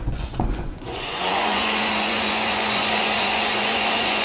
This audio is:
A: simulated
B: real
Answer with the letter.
A